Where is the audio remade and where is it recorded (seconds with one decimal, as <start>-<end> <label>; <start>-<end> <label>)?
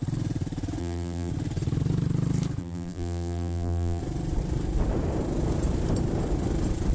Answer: 0.0-0.8 recorded; 0.8-1.3 remade; 1.3-2.6 recorded; 2.6-4.0 remade; 4.0-6.9 recorded